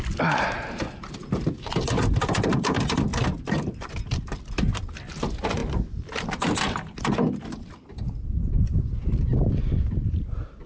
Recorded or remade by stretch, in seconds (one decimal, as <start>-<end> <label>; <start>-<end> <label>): 0.0-10.7 recorded